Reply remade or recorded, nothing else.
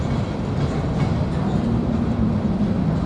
recorded